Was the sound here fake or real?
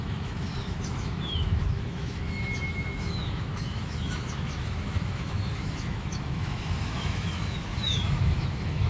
fake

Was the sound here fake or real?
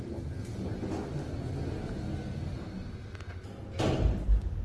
real